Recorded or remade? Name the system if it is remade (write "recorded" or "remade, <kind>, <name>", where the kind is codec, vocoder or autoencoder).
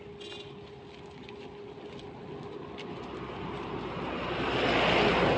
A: recorded